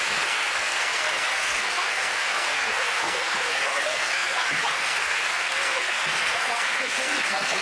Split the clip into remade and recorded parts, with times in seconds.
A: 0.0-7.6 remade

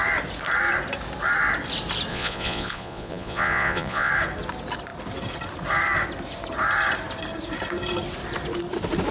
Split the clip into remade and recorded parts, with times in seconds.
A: 0.0-2.1 recorded; 2.1-4.1 remade; 4.1-9.1 recorded

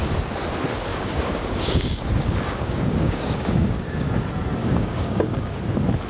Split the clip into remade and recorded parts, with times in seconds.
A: 0.0-0.9 recorded; 0.9-4.1 remade; 4.1-4.6 recorded; 4.6-5.6 remade; 5.6-6.1 recorded

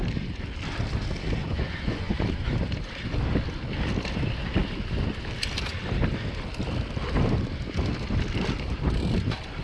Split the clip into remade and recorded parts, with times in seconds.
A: 0.0-1.4 recorded; 1.4-2.5 remade; 2.5-9.6 recorded

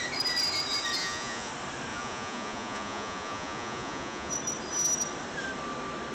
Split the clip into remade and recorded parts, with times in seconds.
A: 0.0-1.0 recorded; 1.0-1.5 remade; 1.5-1.9 recorded; 1.9-4.3 remade; 4.3-6.1 recorded

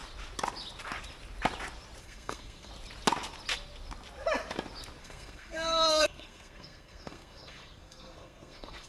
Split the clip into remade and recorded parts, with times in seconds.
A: 0.0-2.0 recorded; 2.0-2.7 remade; 2.7-5.0 recorded; 5.0-8.9 remade

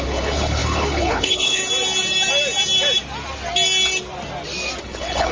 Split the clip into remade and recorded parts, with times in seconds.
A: 0.0-1.6 remade; 1.6-4.8 recorded; 4.8-5.3 remade

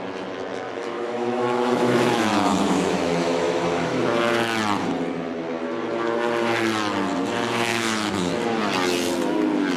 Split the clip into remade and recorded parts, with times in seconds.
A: 0.0-0.5 recorded; 0.5-4.0 remade; 4.0-7.7 recorded; 7.7-8.3 remade; 8.3-9.8 recorded